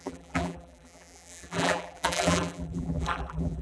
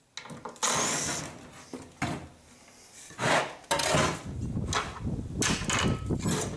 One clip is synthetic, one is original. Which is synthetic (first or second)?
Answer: first